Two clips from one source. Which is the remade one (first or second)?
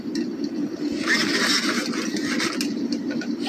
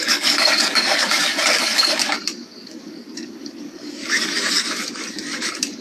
second